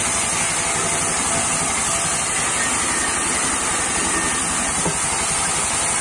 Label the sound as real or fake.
real